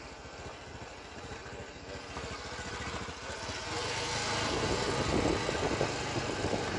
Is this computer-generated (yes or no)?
no